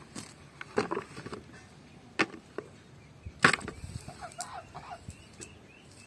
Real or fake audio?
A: real